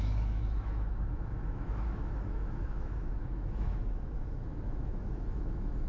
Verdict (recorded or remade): remade